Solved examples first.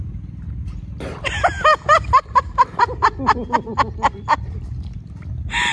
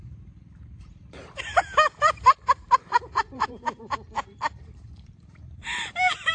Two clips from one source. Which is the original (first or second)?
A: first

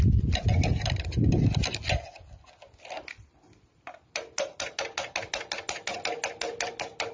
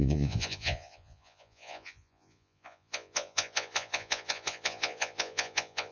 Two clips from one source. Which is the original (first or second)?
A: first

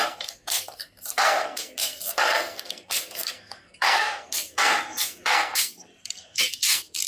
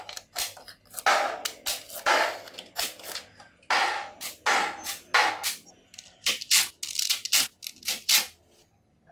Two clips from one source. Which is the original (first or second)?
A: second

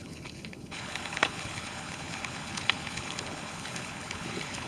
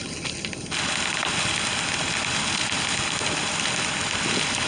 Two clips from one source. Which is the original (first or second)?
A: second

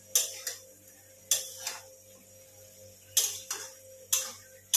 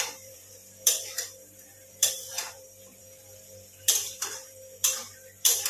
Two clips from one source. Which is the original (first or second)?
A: first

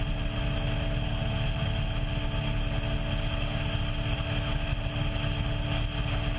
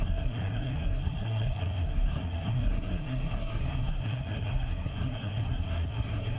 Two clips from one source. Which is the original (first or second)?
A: first